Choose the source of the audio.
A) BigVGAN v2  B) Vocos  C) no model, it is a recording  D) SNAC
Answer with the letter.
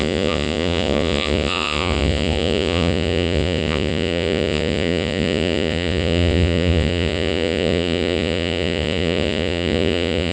B